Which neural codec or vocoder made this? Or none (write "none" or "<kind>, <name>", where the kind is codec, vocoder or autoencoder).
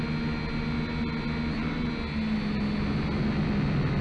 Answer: none